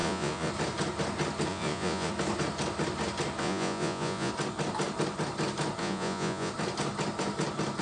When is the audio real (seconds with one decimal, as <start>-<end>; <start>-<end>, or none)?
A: 0.5-1.5; 2.1-3.4; 4.3-5.8; 6.5-7.8

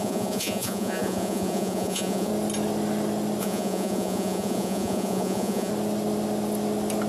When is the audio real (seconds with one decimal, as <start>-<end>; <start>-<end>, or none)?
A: 2.3-3.4; 5.7-7.1

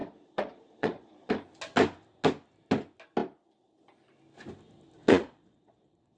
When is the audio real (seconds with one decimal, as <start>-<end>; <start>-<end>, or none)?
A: 1.3-5.0